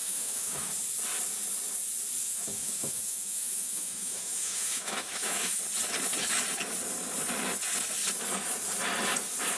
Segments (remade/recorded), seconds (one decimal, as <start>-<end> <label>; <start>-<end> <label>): 0.0-0.7 remade; 0.7-2.2 recorded; 2.2-5.6 remade; 5.6-9.6 recorded